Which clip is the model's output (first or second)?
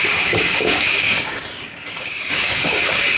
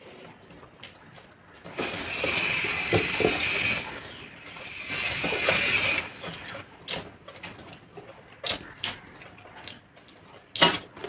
first